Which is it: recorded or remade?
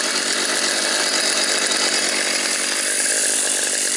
recorded